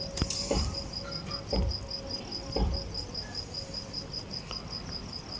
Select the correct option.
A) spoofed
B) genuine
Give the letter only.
B